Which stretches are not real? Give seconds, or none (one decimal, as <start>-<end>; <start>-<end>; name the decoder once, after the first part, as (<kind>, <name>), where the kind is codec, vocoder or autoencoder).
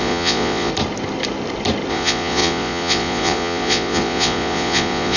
0.0-0.7 (vocoder, Vocos); 1.9-5.2